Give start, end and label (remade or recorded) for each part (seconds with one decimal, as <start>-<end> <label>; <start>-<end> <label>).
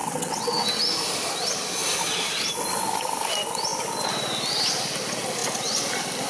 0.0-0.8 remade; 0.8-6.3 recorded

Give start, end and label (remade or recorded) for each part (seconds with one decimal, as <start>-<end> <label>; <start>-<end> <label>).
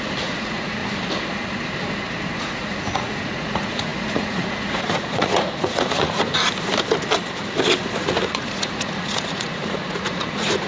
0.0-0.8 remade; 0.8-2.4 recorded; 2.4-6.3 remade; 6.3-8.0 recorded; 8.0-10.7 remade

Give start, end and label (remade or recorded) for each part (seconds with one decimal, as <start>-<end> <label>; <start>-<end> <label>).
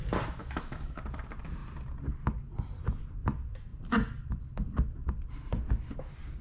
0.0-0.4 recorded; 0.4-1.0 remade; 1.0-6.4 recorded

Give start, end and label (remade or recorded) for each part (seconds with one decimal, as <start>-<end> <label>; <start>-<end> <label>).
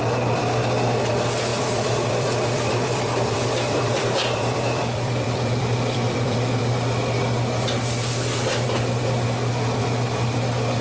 0.0-1.5 recorded; 1.5-6.6 remade; 6.6-10.8 recorded